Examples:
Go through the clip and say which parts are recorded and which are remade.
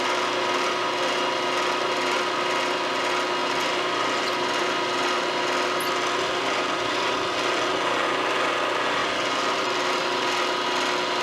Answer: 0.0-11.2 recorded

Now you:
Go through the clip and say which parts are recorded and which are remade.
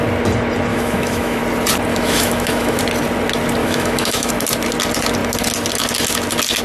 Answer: 0.0-0.7 recorded; 0.7-1.4 remade; 1.4-1.9 recorded; 1.9-2.8 remade; 2.8-3.6 recorded; 3.6-4.3 remade; 4.3-6.6 recorded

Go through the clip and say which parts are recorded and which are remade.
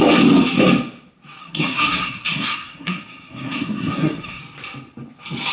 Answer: 0.0-1.4 recorded; 1.4-4.4 remade; 4.4-5.5 recorded